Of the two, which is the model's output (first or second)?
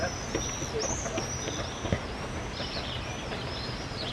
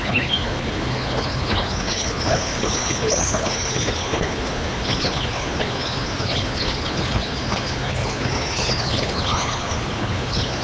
second